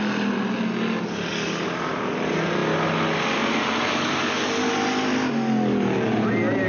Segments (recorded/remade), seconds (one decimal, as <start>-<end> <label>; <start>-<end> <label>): 0.0-6.7 recorded